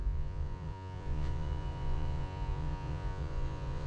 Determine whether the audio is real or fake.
fake